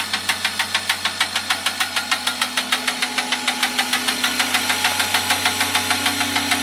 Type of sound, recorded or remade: recorded